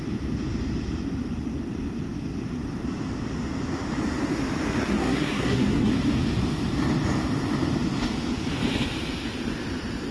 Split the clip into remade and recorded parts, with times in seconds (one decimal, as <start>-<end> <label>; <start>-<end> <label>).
0.0-4.8 recorded; 4.8-5.9 remade; 5.9-10.1 recorded